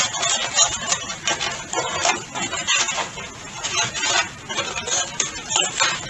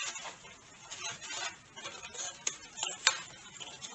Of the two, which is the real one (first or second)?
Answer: first